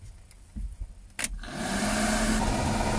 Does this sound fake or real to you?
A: real